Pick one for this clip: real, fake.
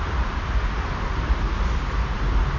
real